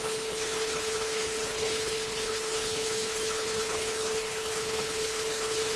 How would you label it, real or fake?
fake